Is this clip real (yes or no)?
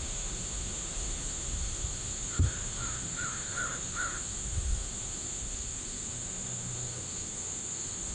no